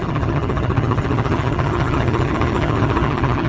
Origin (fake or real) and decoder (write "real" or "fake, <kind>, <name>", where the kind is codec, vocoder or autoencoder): fake, vocoder, HiFi-GAN